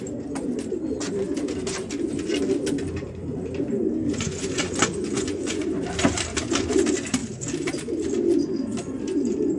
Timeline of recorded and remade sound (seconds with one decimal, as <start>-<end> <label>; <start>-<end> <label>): 0.0-4.1 recorded; 4.1-5.7 remade; 5.7-9.6 recorded